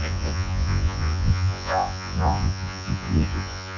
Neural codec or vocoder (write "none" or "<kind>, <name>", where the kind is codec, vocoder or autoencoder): vocoder, Vocos